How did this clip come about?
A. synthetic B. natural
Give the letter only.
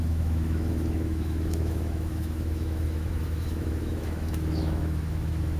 A